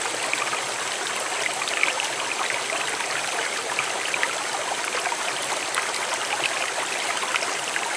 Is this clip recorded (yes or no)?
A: yes